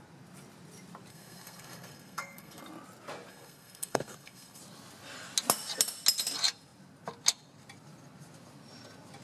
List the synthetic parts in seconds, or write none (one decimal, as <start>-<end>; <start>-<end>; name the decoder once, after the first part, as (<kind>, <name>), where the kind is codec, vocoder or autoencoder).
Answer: 1.1-2.6 (codec, SNAC); 3.3-4.6